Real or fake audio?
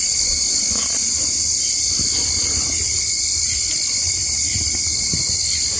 real